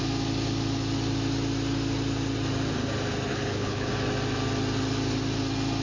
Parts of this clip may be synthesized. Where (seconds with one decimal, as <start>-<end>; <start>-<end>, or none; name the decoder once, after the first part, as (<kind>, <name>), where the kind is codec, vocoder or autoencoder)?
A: 3.3-3.9 (codec, HILCodec)